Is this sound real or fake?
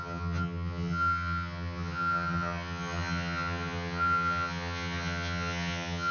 fake